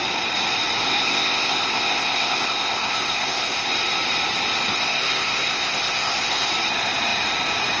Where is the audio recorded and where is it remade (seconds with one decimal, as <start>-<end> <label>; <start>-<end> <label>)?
0.0-0.8 recorded; 0.8-3.7 remade; 3.7-4.7 recorded; 4.7-6.5 remade; 6.5-7.8 recorded